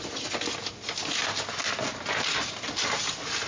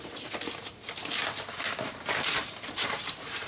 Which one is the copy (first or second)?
second